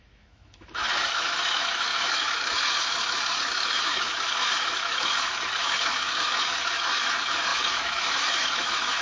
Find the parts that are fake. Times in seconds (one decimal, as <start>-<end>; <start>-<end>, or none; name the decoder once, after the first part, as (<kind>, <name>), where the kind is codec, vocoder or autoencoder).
0.0-9.0 (autoencoder, DAC-VAE)